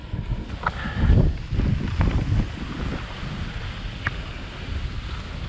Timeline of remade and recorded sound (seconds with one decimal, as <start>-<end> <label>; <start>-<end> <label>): 0.0-0.5 remade; 0.5-5.5 recorded